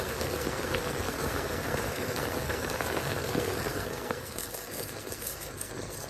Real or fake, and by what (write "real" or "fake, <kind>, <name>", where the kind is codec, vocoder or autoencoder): fake, codec, SNAC